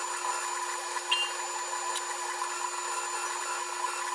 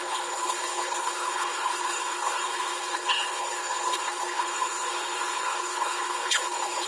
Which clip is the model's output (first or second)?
second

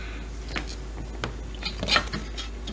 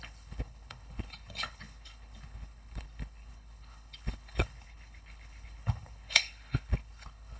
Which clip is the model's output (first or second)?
second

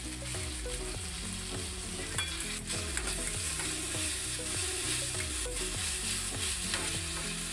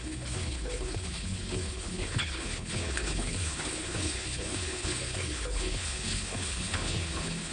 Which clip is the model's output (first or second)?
second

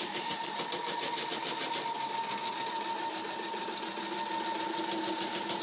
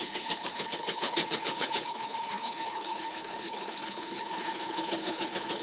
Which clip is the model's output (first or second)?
second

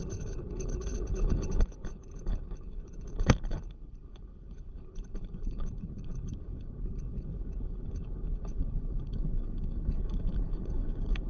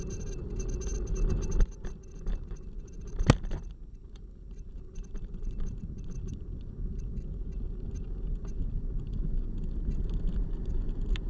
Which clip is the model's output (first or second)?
first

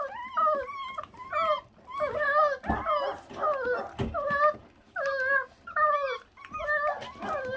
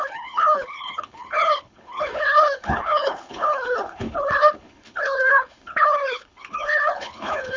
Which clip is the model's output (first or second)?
second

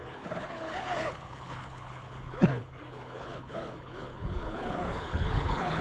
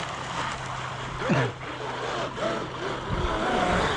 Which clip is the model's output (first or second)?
first